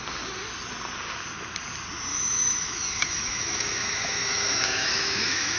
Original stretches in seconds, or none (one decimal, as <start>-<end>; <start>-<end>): 0.0-2.1